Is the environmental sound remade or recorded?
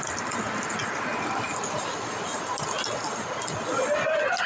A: recorded